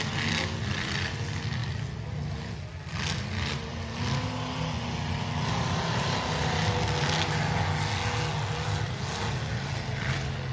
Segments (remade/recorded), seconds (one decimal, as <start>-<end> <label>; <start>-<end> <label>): 0.0-10.5 recorded